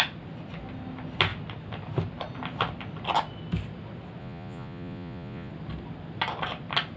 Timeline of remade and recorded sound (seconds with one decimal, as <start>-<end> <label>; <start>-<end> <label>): 0.0-4.2 recorded; 4.2-5.5 remade; 5.5-7.0 recorded